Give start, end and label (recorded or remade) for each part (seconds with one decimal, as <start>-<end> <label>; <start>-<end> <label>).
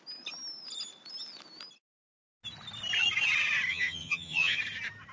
0.0-3.7 recorded; 3.7-4.6 remade; 4.6-5.1 recorded